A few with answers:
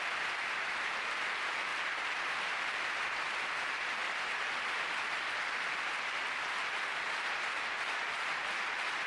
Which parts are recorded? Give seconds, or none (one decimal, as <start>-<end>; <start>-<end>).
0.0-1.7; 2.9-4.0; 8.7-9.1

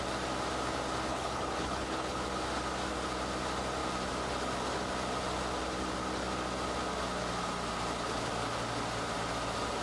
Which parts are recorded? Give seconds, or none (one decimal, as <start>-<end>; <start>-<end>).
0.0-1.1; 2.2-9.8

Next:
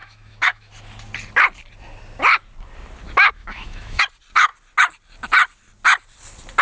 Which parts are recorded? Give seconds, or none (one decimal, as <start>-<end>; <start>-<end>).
0.7-3.4; 4.0-6.6